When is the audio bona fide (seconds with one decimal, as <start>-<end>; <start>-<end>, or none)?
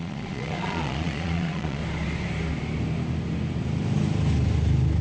1.8-5.0